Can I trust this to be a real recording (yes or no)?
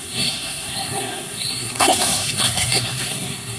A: no